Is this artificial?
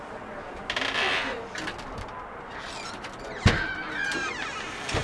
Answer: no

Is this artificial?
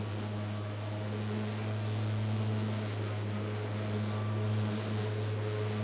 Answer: no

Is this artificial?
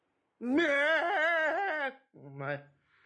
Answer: no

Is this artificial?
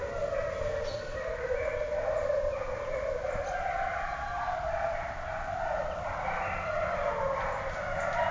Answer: no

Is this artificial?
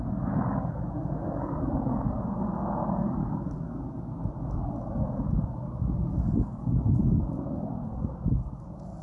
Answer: no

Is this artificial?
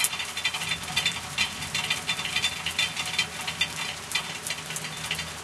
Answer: no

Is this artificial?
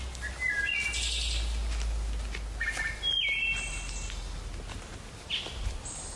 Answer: no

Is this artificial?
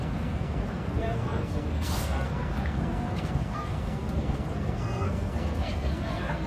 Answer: yes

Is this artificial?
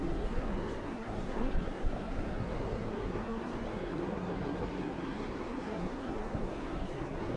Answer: yes